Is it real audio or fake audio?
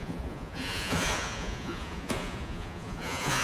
fake